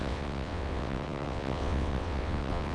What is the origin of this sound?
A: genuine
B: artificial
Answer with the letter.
B